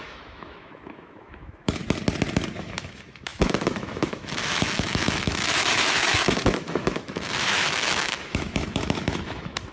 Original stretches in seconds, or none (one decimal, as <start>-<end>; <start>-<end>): 1.8-2.6